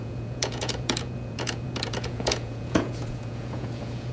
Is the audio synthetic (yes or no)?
yes